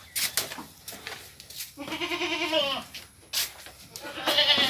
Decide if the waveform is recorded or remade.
recorded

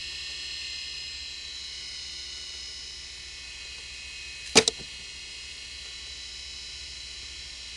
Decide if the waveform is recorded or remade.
recorded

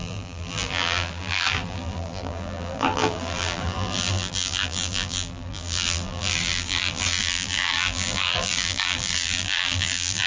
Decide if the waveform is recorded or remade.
remade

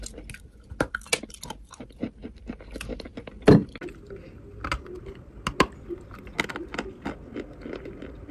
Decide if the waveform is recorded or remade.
recorded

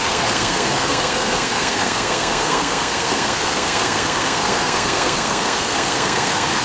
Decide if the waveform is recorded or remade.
remade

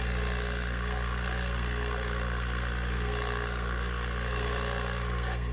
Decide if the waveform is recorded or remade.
remade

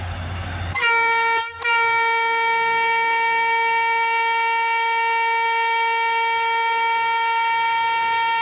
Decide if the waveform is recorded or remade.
remade